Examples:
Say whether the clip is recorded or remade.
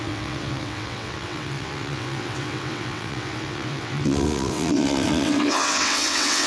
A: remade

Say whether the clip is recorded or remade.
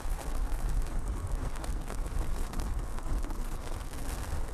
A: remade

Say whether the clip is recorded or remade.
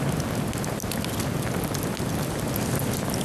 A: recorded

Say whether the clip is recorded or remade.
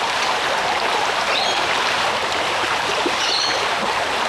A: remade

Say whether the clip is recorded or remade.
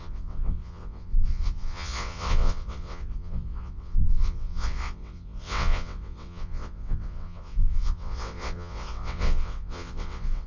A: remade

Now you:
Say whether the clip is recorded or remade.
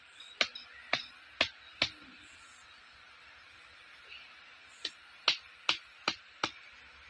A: recorded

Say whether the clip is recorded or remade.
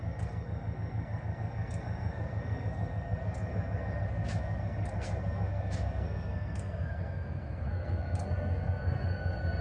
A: remade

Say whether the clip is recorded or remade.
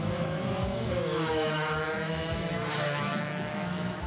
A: remade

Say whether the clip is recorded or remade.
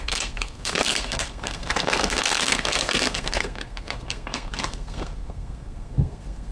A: remade